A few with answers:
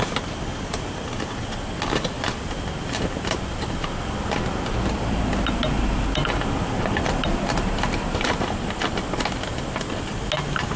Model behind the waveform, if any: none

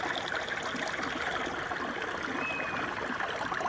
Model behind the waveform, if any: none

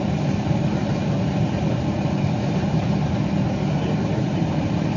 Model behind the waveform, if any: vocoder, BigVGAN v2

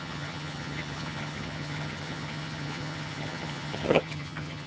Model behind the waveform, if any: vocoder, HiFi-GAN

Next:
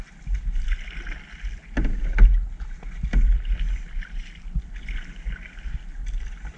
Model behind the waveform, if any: none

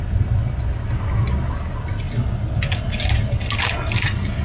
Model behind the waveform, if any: none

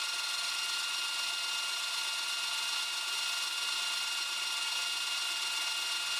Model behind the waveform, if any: none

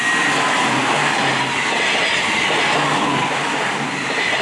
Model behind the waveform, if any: none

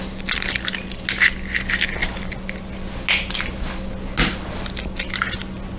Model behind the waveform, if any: none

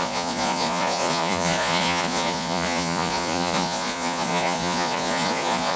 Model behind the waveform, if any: vocoder, Vocos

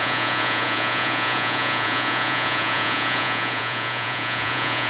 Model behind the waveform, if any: vocoder, Vocos